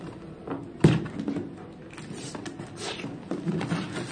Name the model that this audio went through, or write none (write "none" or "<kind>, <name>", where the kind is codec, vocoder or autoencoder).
none